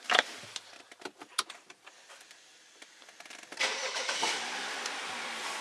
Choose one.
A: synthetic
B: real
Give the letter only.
A